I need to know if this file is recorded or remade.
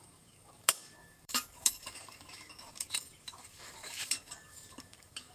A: remade